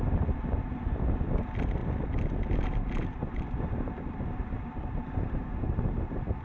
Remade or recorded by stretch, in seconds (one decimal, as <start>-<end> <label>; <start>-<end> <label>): 0.0-6.4 recorded